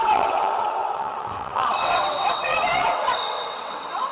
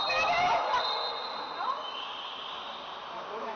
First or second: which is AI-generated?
first